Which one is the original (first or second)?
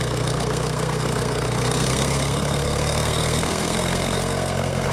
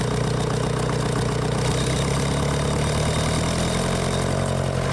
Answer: second